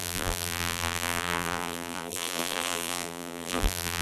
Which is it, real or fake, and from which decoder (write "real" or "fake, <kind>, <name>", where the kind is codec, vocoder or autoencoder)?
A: fake, vocoder, BigVGAN v2